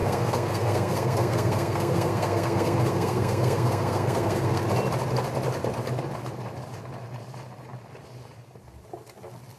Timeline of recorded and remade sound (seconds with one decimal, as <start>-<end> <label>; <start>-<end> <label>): 0.0-4.6 remade; 4.6-9.6 recorded